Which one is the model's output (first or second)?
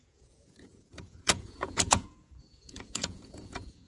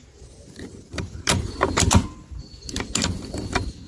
first